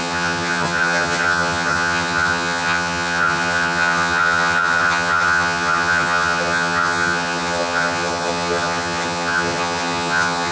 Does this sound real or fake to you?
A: fake